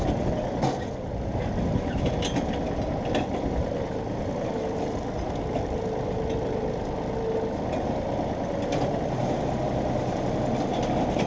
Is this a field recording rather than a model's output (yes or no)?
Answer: yes